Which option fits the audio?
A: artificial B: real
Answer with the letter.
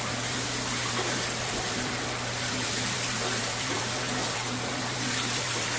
A